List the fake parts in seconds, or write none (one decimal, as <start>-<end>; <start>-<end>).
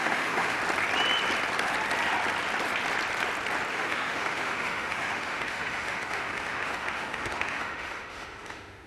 0.0-0.6; 3.7-8.9